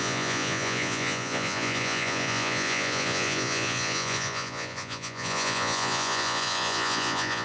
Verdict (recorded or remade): remade